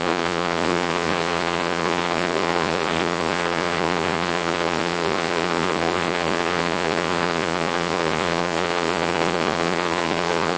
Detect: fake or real fake